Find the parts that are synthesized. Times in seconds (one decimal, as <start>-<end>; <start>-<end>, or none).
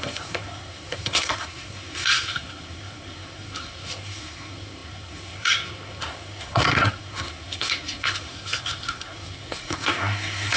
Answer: 0.0-10.6